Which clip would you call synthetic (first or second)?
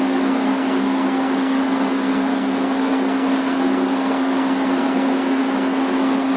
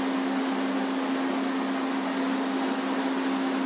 first